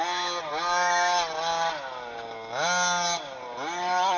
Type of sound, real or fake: real